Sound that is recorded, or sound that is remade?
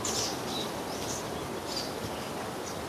recorded